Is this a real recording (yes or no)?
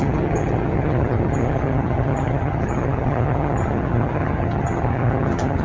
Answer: no